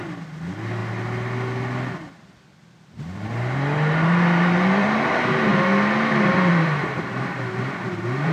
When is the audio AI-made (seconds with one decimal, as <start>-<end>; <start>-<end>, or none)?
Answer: 0.0-0.8; 3.0-5.5; 6.5-8.3